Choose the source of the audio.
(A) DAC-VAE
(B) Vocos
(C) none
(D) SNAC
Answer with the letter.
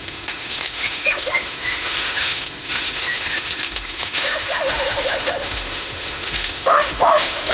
A